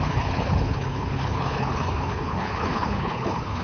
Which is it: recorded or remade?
remade